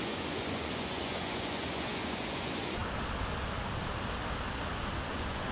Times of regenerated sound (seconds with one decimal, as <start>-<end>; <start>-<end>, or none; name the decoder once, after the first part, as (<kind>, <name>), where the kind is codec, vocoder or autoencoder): 0.0-2.8 (vocoder, Vocos); 5.1-5.5

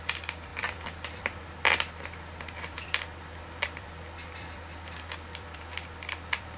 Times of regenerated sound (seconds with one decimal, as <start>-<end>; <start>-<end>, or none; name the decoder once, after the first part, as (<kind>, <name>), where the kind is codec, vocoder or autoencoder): 0.0-6.6 (vocoder, BigVGAN v2)

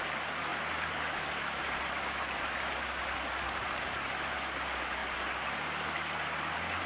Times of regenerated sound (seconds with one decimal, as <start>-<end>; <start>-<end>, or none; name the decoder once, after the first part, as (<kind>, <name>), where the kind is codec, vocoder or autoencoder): none